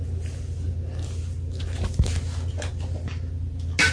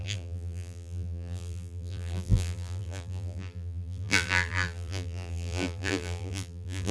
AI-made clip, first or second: second